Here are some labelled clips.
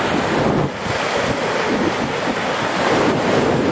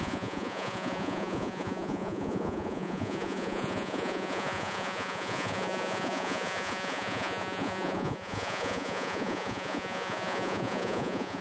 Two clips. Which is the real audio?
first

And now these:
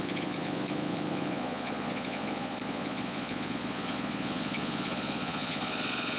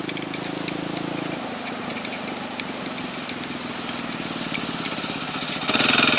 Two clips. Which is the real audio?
second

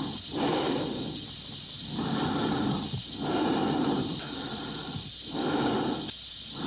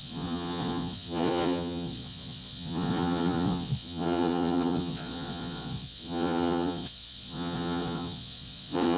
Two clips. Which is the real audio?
first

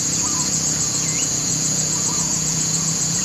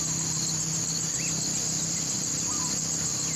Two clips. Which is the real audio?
second